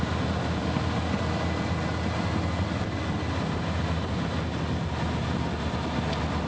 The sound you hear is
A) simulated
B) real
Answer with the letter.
B